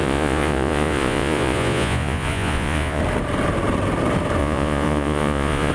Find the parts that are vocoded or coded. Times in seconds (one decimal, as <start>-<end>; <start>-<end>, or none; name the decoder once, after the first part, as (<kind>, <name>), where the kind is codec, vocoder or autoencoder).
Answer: 0.0-3.0 (vocoder, Vocos); 4.4-5.7

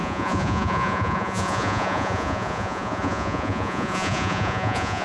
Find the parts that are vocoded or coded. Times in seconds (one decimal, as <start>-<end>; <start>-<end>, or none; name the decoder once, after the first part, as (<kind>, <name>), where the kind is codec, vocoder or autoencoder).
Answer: 0.0-5.0 (vocoder, Vocos)

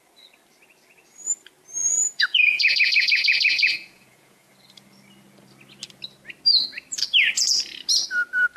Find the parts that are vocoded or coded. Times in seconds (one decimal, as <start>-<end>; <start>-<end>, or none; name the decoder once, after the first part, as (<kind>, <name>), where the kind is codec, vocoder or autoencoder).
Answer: 1.8-4.5 (vocoder, Vocos)

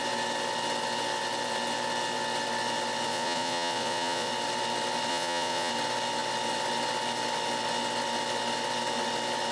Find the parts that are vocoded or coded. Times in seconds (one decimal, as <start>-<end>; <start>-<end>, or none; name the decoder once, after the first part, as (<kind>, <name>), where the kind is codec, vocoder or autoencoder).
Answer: 3.1-4.3 (vocoder, Vocos); 5.1-5.7

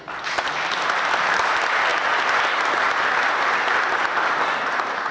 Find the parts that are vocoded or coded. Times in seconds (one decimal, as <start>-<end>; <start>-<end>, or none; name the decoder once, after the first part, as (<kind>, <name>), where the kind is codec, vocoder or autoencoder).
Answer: none